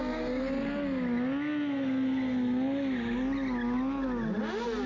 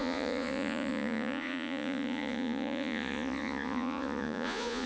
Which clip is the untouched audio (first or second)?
first